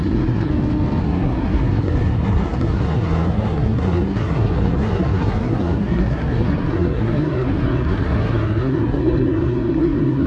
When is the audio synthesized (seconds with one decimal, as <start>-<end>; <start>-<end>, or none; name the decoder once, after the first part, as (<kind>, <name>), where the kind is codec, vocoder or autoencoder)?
0.0-0.5 (codec, SNAC); 1.0-10.3